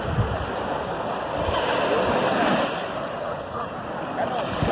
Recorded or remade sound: recorded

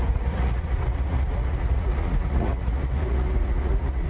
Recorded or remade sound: remade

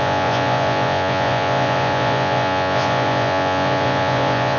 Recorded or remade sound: remade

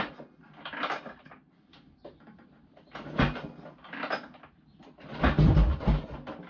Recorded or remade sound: recorded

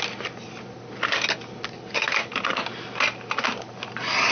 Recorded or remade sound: recorded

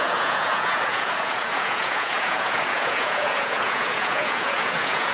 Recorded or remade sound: remade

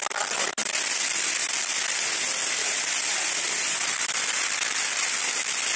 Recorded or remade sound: recorded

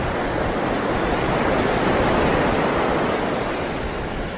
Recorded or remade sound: recorded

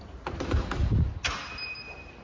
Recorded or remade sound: recorded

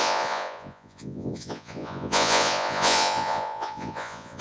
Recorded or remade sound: remade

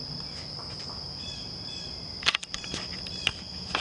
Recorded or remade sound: recorded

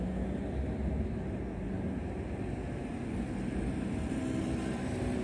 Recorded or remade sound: recorded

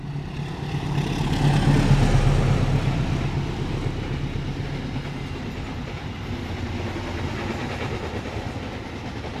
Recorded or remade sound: recorded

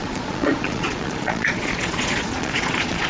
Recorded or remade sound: remade